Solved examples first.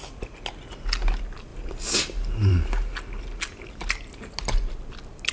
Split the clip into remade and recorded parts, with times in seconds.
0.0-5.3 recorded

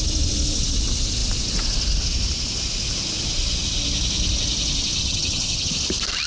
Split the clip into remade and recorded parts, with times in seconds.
0.0-5.0 recorded; 5.0-5.7 remade; 5.7-6.3 recorded

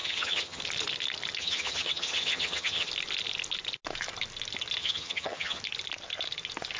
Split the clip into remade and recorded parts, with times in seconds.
0.0-0.6 remade; 0.6-1.4 recorded; 1.4-2.9 remade; 2.9-4.8 recorded; 4.8-5.6 remade; 5.6-6.8 recorded

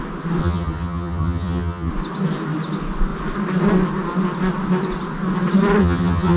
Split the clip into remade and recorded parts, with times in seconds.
0.0-0.4 recorded; 0.4-1.9 remade; 1.9-5.8 recorded; 5.8-6.4 remade

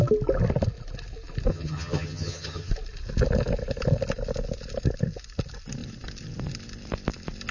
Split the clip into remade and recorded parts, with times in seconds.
0.0-1.5 recorded; 1.5-2.7 remade; 2.7-7.5 recorded